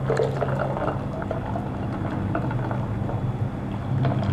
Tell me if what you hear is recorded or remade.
recorded